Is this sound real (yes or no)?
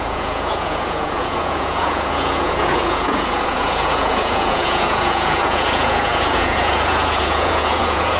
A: no